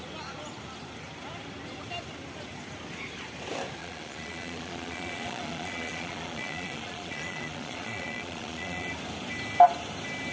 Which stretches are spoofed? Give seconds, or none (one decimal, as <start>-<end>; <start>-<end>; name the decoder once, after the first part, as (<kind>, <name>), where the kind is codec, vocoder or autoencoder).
3.8-8.9 (vocoder, Vocos)